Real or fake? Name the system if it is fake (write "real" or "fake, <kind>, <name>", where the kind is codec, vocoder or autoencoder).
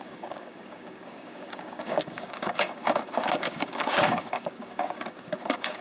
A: fake, codec, DAC